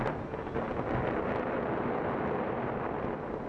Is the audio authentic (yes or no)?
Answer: yes